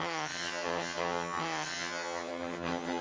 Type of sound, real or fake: fake